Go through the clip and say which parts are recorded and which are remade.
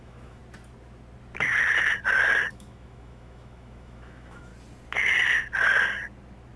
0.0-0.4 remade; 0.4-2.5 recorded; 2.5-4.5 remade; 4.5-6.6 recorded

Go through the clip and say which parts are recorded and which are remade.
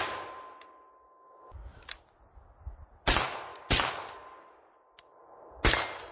0.0-6.1 recorded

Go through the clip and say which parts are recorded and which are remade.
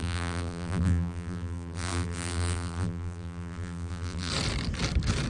0.0-4.3 remade; 4.3-5.3 recorded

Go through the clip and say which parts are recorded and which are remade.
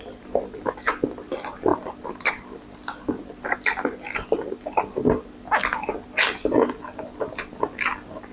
0.0-8.3 recorded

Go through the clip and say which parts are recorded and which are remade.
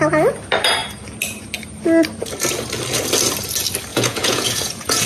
0.0-3.9 recorded; 3.9-5.1 remade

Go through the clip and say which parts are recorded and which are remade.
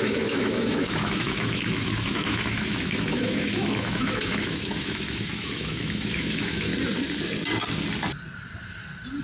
0.0-6.7 remade; 6.7-9.2 recorded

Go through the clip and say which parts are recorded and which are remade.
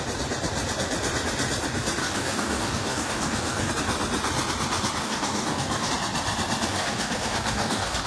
0.0-2.0 recorded; 2.0-3.7 remade; 3.7-5.0 recorded; 5.0-5.9 remade; 5.9-6.7 recorded; 6.7-8.1 remade